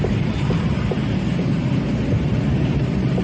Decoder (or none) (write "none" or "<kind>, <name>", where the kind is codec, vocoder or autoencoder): vocoder, BigVGAN v2